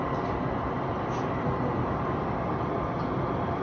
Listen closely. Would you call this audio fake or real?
real